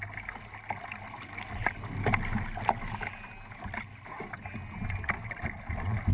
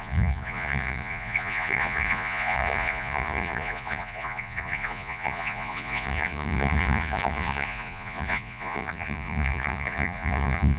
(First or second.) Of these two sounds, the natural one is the first